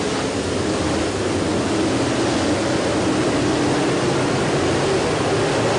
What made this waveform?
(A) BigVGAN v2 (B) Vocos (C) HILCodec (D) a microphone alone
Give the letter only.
D